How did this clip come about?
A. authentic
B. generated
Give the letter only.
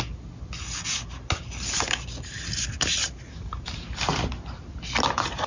A